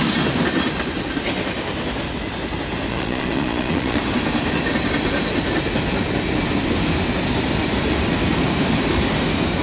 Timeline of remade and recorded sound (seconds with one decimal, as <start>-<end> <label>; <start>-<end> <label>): 0.0-2.9 recorded; 2.9-4.0 remade; 4.0-9.6 recorded